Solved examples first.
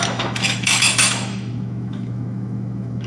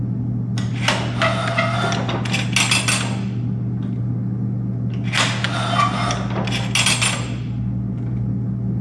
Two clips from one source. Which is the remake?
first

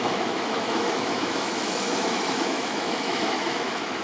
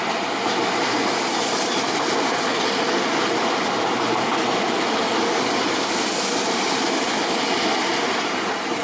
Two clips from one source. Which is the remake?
first